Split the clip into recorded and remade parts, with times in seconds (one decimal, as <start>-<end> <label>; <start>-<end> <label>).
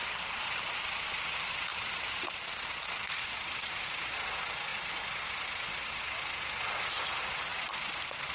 0.0-0.8 remade; 0.8-1.7 recorded; 1.7-3.7 remade; 3.7-8.3 recorded